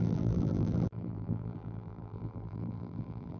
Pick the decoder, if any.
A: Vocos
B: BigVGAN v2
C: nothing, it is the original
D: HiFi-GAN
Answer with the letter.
B